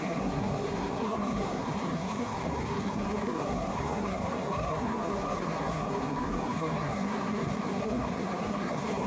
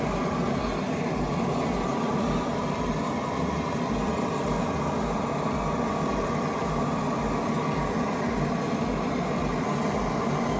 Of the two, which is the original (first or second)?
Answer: second